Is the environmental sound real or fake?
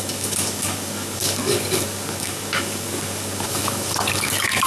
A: fake